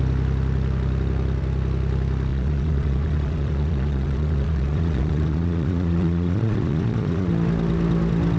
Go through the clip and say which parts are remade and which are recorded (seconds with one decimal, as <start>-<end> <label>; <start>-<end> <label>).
0.0-2.3 recorded; 2.3-7.3 remade; 7.3-8.4 recorded